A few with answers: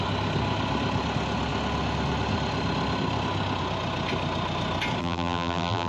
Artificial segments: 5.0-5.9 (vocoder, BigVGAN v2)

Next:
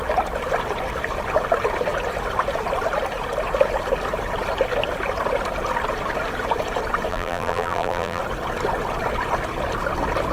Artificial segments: 7.1-8.2 (vocoder, BigVGAN v2)

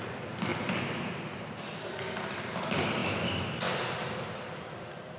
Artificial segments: none

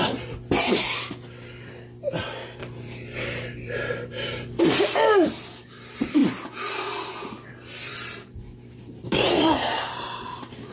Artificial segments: 2.6-4.6 (vocoder, BigVGAN v2); 7.9-10.7

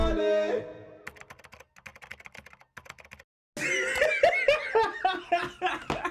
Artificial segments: none

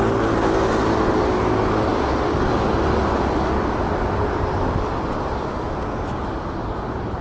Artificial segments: none

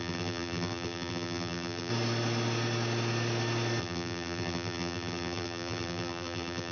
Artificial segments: 0.0-1.9 (vocoder, BigVGAN v2); 3.8-6.7

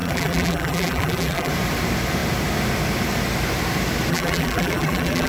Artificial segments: 0.0-1.5 (vocoder, BigVGAN v2); 4.1-5.3